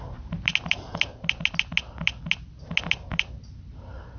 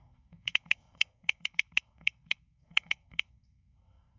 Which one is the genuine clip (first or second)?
first